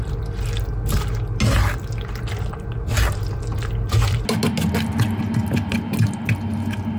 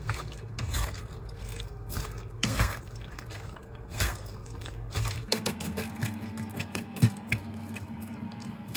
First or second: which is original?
first